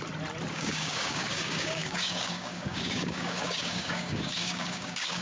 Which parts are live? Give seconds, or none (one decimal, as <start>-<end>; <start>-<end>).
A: 0.0-0.5